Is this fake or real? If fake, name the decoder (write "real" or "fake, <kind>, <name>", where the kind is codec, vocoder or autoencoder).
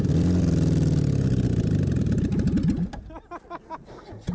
real